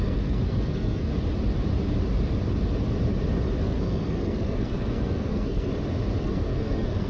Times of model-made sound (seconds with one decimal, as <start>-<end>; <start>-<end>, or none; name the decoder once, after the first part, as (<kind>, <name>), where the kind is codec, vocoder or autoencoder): 0.0-1.1 (codec, SNAC); 3.6-5.7; 6.2-7.1